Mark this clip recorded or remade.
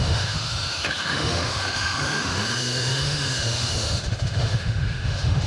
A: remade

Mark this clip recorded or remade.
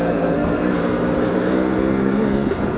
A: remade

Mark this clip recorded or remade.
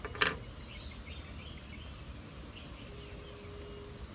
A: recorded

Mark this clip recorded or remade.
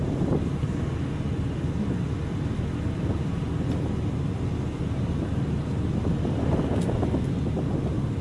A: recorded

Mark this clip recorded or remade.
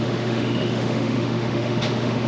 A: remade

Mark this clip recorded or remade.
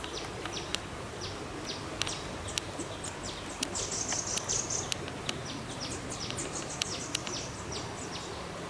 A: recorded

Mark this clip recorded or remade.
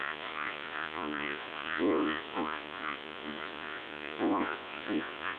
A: remade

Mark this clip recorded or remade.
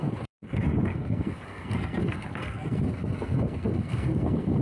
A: remade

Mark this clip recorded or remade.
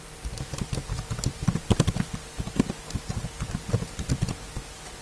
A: recorded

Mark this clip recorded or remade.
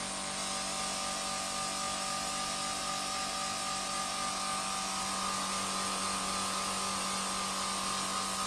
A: recorded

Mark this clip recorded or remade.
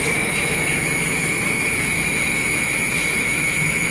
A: remade